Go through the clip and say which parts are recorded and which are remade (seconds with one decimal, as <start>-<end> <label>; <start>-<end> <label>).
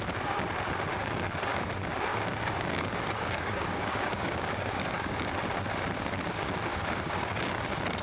0.0-0.9 recorded; 0.9-1.7 remade; 1.7-2.1 recorded; 2.1-5.3 remade; 5.3-6.7 recorded; 6.7-7.6 remade; 7.6-8.0 recorded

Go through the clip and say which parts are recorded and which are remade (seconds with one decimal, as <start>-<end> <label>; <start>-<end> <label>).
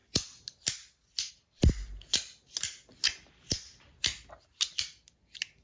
0.0-5.6 recorded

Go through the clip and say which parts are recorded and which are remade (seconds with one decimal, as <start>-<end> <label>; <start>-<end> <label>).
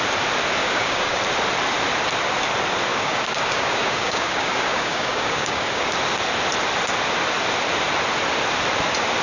0.0-0.6 recorded; 0.6-1.2 remade; 1.2-2.9 recorded; 2.9-5.9 remade; 5.9-9.2 recorded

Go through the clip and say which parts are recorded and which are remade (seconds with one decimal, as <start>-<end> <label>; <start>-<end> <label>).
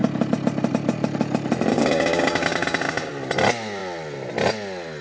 0.0-1.7 recorded; 1.7-3.1 remade; 3.1-5.0 recorded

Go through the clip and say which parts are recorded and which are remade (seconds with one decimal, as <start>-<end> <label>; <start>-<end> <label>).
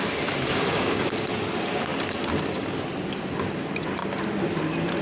0.0-0.5 recorded; 0.5-1.1 remade; 1.1-5.0 recorded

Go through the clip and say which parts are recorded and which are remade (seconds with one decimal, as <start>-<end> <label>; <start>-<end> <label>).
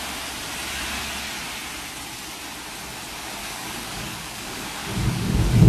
0.0-3.4 recorded; 3.4-5.7 remade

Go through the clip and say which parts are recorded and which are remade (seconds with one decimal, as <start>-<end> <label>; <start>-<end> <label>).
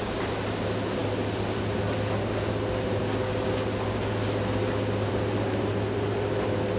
0.0-6.8 recorded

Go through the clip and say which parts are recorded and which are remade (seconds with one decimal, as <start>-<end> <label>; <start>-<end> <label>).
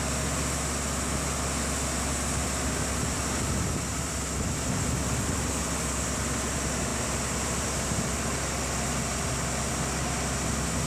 0.0-10.9 recorded